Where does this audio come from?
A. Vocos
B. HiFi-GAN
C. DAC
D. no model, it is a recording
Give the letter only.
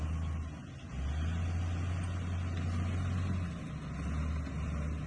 D